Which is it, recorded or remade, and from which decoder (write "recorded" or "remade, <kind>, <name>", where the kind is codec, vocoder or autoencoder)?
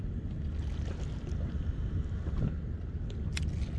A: recorded